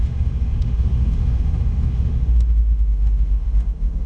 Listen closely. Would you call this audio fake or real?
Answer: fake